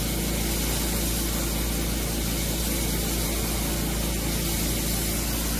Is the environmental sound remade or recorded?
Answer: recorded